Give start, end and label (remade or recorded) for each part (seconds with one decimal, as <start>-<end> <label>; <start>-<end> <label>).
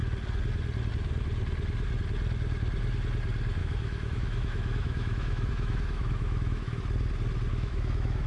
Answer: 0.0-3.6 recorded; 3.6-6.8 remade; 6.8-7.5 recorded; 7.5-8.3 remade